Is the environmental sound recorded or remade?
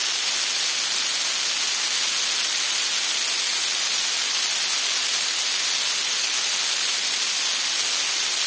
recorded